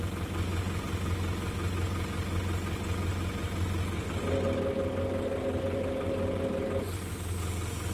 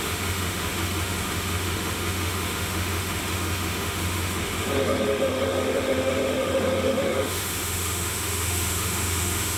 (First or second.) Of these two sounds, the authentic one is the first